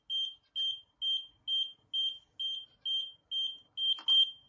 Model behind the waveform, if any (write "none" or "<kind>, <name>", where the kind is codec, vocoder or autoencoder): none